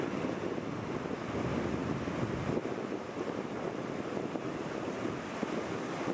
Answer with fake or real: real